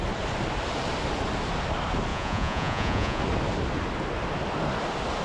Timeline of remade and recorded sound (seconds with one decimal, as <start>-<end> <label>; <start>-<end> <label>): 0.0-2.1 recorded; 2.1-3.2 remade; 3.2-5.2 recorded